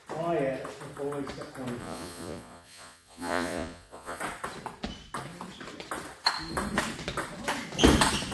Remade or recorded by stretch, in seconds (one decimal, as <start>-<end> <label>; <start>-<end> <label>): 0.0-1.8 recorded; 1.8-4.2 remade; 4.2-8.3 recorded